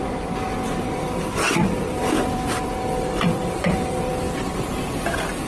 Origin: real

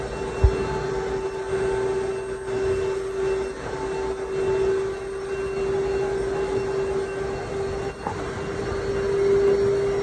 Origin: real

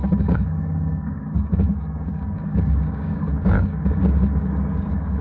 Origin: fake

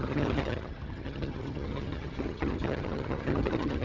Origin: fake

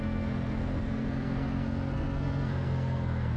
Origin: fake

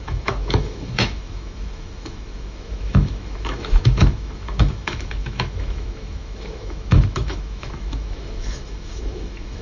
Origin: fake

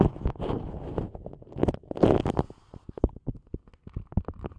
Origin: real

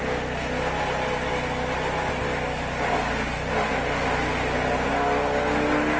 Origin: real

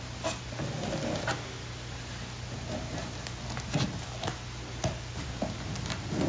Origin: real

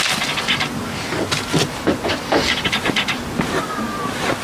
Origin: real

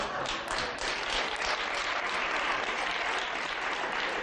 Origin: real